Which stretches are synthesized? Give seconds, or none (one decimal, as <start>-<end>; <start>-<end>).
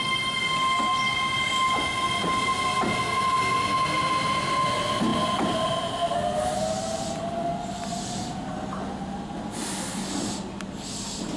none